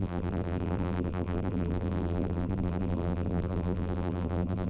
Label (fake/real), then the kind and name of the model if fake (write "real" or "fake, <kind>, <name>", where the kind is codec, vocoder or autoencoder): fake, vocoder, BigVGAN v2